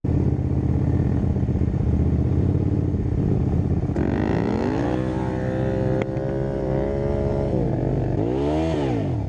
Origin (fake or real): real